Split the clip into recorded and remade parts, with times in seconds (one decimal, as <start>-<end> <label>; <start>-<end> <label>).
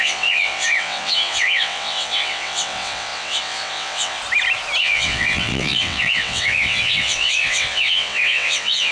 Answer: 0.0-4.2 remade; 4.2-4.8 recorded; 4.8-8.9 remade